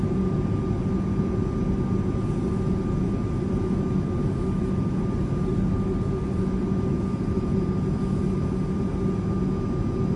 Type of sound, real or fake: real